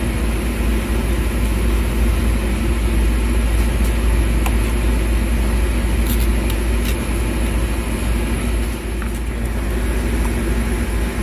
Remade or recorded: recorded